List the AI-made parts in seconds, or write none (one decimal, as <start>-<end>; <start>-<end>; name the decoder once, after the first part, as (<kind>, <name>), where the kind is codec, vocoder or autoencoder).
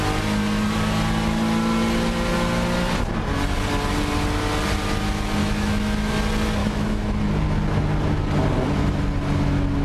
5.4-6.1 (autoencoder, DAC-VAE); 6.6-7.2